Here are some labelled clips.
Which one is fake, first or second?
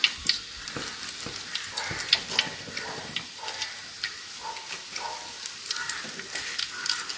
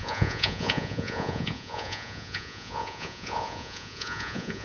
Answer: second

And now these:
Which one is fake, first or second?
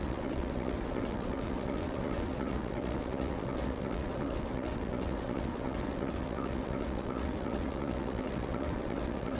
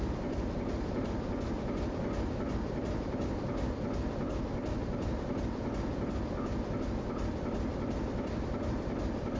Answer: first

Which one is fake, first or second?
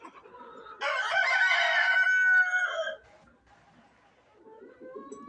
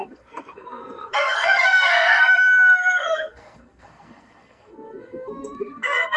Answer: second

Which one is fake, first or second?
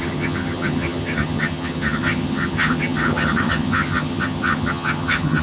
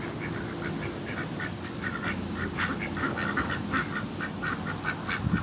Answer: first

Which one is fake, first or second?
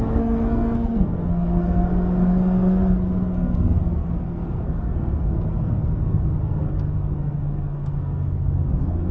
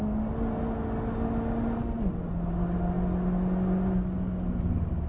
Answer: first